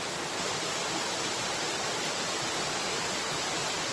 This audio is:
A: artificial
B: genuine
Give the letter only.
B